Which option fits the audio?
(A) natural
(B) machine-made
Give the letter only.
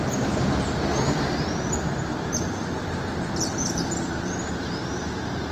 B